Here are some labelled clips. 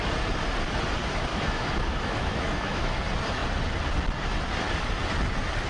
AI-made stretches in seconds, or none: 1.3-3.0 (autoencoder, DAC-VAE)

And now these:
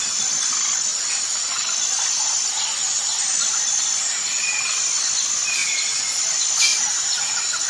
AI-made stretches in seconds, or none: none

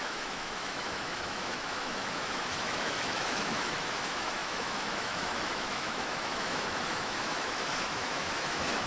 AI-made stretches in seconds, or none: 0.0-8.9 (autoencoder, DAC-VAE)

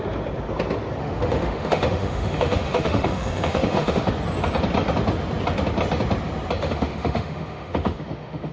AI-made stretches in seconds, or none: 1.0-4.1 (autoencoder, DAC-VAE); 6.6-8.5

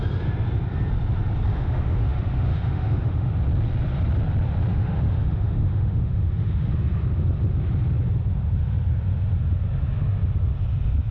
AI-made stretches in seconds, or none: 1.5-3.3 (autoencoder, DAC-VAE); 4.7-6.7

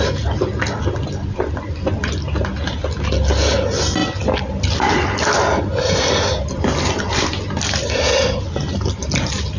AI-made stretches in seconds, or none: none

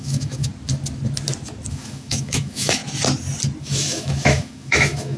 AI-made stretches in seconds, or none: 0.0-0.5 (autoencoder, DAC-VAE); 1.7-2.8; 3.6-5.2

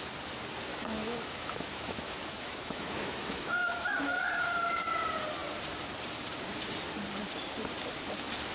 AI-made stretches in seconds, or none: 0.7-4.2 (autoencoder, DAC-VAE)